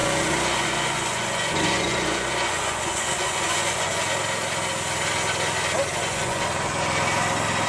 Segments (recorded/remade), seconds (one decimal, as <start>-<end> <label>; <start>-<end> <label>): 0.0-4.0 remade; 4.0-5.9 recorded; 5.9-6.4 remade; 6.4-7.7 recorded